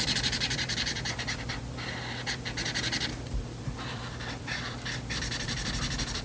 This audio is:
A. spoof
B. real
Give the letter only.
A